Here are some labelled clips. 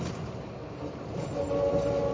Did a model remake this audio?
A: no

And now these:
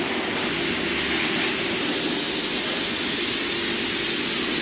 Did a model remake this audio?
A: no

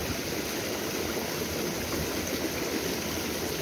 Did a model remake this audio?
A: no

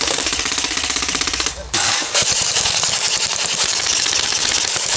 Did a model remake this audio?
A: yes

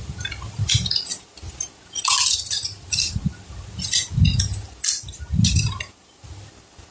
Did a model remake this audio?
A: no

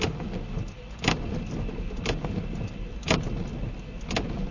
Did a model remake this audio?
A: no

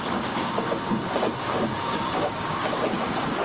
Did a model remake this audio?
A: yes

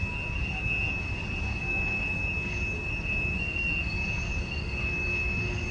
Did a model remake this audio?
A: yes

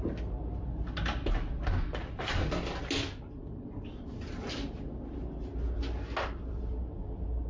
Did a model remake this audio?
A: no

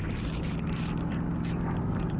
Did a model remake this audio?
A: no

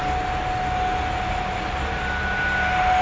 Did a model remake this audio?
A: no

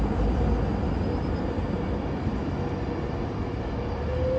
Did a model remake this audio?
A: no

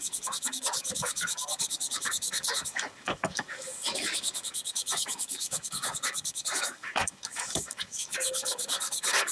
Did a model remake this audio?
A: yes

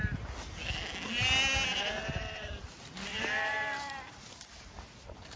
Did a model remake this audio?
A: no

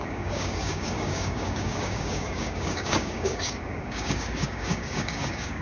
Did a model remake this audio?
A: yes